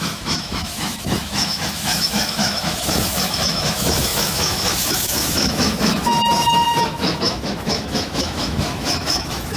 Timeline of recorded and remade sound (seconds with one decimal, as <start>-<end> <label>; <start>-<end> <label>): 0.0-9.6 remade

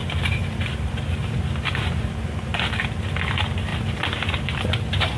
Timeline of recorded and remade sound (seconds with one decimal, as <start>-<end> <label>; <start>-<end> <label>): 0.0-5.2 recorded

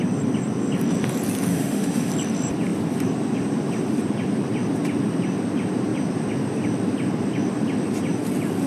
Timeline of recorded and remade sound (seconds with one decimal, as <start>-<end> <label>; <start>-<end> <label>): 0.0-1.5 recorded; 1.5-2.1 remade; 2.1-8.7 recorded

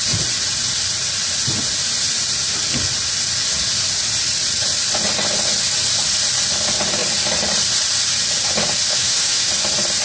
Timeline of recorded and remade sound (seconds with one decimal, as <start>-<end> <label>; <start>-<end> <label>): 0.0-8.9 recorded; 8.9-9.5 remade; 9.5-10.0 recorded

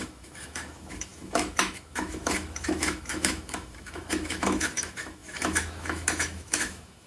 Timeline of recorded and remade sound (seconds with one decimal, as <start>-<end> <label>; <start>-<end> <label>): 0.0-7.1 remade

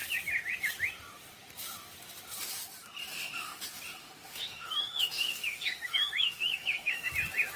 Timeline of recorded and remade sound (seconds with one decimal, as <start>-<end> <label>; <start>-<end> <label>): 0.0-3.1 recorded; 3.1-3.6 remade; 3.6-4.0 recorded; 4.0-7.1 remade; 7.1-7.6 recorded

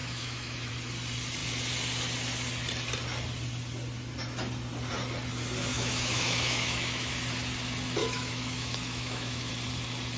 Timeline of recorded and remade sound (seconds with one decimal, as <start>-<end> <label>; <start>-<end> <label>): 0.0-0.7 remade; 0.7-5.7 recorded; 5.7-7.1 remade; 7.1-8.0 recorded; 8.0-9.5 remade; 9.5-10.2 recorded

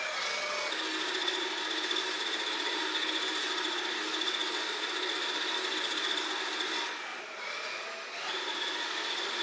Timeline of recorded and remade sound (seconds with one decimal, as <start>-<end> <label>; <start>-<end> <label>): 0.0-9.4 recorded